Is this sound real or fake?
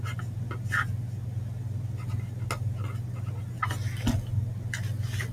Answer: real